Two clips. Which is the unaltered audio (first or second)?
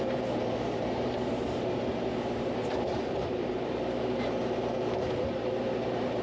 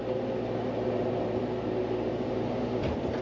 second